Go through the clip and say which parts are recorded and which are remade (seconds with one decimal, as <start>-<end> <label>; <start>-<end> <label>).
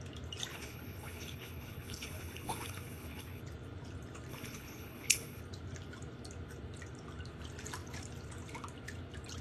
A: 0.0-0.5 recorded; 0.5-3.4 remade; 3.4-4.3 recorded; 4.3-5.4 remade; 5.4-9.4 recorded